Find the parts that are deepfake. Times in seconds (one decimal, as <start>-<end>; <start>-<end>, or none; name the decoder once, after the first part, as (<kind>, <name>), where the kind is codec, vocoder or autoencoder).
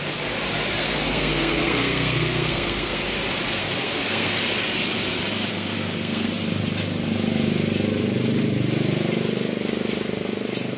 0.8-3.0 (codec, SNAC); 3.6-4.4; 5.5-6.3